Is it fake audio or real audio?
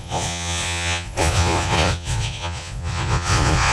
fake